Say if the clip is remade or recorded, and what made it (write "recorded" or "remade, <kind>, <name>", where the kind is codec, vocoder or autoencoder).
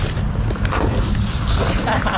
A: recorded